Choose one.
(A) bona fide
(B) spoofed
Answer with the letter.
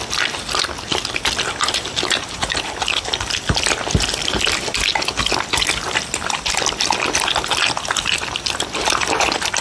A